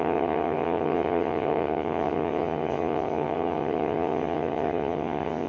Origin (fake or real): fake